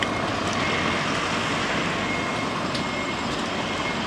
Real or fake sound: real